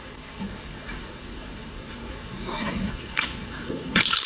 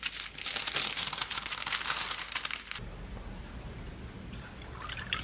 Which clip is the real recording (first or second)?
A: second